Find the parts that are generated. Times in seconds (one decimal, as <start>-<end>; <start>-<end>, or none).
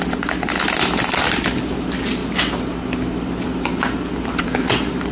none